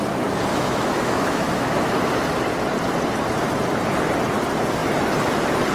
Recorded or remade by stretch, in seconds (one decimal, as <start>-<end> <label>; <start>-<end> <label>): 0.0-0.5 recorded; 0.5-2.1 remade; 2.1-5.7 recorded